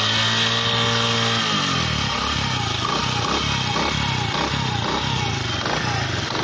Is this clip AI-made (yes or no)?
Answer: no